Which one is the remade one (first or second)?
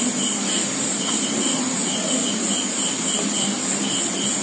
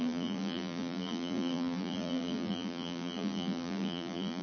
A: second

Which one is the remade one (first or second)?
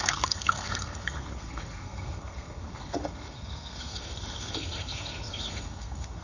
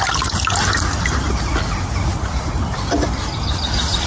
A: first